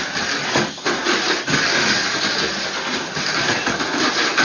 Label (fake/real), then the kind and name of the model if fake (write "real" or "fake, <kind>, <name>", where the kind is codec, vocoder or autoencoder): real